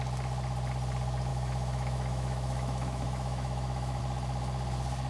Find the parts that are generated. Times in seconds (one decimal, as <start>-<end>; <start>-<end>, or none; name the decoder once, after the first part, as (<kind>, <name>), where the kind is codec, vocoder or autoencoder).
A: 1.3-4.0 (autoencoder, DAC-VAE)